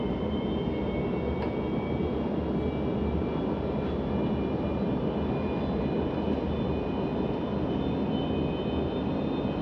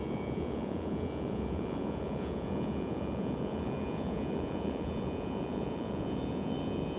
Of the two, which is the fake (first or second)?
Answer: second